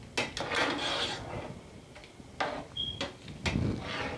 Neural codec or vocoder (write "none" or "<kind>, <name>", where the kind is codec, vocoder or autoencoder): none